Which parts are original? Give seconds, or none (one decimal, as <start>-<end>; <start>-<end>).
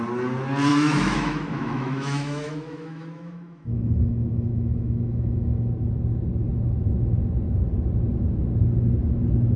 0.0-0.7; 5.7-9.6